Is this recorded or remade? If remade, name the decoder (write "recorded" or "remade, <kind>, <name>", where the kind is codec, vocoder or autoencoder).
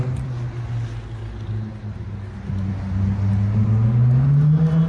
recorded